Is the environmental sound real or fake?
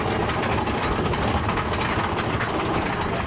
real